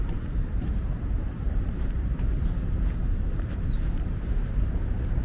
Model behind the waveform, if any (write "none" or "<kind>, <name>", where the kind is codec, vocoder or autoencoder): vocoder, BigVGAN v2